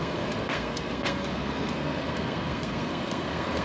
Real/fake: fake